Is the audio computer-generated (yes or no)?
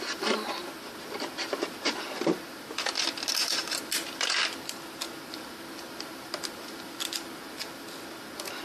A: no